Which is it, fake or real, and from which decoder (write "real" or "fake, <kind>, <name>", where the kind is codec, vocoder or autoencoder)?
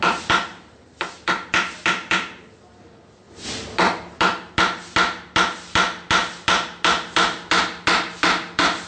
real